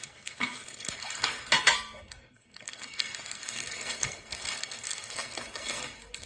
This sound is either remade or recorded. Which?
remade